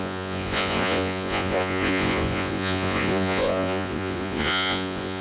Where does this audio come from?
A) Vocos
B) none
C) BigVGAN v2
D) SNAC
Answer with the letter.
A